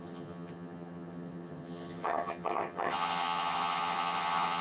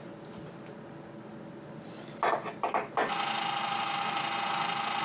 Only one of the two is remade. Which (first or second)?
first